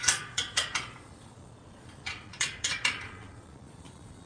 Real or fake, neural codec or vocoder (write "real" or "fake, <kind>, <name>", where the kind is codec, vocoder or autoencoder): fake, vocoder, Vocos